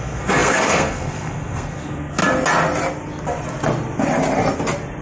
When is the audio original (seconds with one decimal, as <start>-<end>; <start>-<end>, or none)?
2.2-5.0